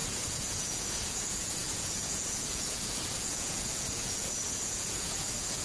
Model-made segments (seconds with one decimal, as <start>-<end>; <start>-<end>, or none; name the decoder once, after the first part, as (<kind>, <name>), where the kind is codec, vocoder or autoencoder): 0.0-5.6 (vocoder, Vocos)